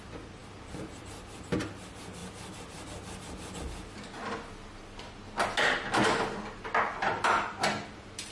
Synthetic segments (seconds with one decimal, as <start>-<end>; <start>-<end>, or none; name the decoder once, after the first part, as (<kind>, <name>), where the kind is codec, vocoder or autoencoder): none